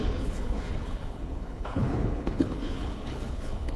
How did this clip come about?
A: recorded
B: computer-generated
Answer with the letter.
B